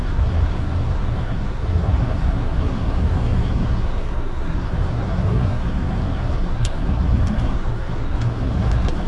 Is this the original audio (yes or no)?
no